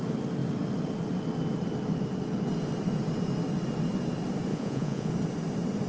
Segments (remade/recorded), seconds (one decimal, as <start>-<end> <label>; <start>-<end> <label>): 0.0-4.5 recorded; 4.5-5.1 remade; 5.1-5.9 recorded